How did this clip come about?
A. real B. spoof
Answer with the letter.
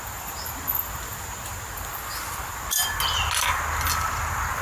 A